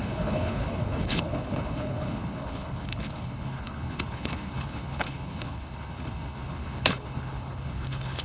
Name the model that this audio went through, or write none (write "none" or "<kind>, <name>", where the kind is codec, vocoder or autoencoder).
codec, HILCodec